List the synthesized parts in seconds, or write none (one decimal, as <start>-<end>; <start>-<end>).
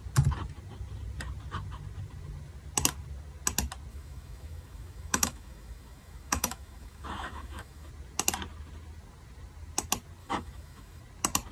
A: 3.9-7.9; 10.2-11.0